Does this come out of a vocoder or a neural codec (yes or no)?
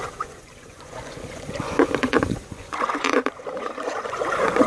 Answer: yes